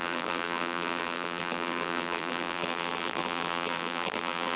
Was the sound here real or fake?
fake